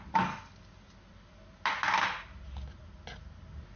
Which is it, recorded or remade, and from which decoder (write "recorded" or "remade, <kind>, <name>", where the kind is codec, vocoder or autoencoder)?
recorded